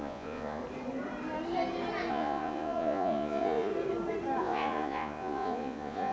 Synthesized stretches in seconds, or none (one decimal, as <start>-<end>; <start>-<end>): 0.0-0.6; 2.1-3.7; 4.4-6.1